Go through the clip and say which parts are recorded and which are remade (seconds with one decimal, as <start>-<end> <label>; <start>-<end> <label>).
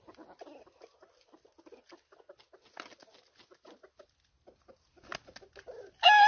0.0-6.3 recorded